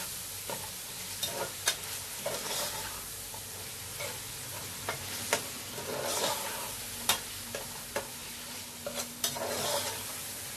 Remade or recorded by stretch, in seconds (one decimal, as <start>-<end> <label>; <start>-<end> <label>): 0.0-10.6 recorded